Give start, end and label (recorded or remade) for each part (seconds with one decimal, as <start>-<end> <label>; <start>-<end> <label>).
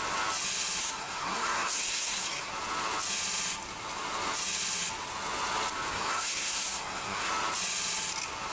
0.0-0.8 recorded; 0.8-2.5 remade; 2.5-5.9 recorded; 5.9-7.3 remade; 7.3-8.5 recorded